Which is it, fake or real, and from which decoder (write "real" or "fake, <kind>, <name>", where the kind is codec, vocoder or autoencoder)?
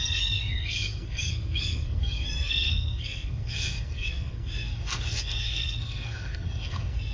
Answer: fake, codec, SNAC